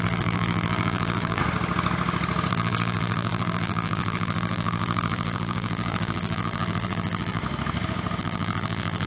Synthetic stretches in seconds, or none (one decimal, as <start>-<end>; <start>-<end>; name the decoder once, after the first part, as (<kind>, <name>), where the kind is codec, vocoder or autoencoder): 0.0-1.4 (vocoder, BigVGAN v2); 2.5-7.4; 8.2-9.1

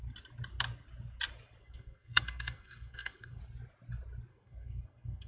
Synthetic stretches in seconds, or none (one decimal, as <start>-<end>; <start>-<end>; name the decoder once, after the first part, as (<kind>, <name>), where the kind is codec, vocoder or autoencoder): 1.6-3.4 (codec, SNAC); 4.3-5.3

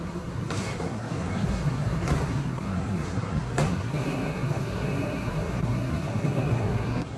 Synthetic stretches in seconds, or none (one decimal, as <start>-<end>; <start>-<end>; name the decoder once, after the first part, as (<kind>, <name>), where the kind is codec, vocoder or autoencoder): 0.0-7.2 (codec, SNAC)

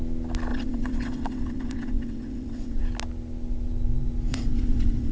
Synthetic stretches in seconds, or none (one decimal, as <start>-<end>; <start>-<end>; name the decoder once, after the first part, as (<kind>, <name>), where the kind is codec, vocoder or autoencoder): 0.5-2.8 (vocoder, WaveNeXt); 4.3-5.1

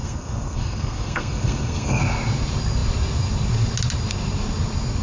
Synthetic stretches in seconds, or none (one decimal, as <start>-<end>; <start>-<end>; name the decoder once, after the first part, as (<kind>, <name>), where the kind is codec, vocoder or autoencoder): 0.0-2.0 (codec, SNAC)

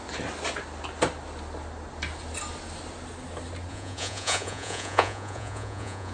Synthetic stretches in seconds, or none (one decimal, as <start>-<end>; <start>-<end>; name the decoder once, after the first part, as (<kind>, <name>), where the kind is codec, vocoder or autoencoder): 3.7-6.1 (vocoder, Vocos)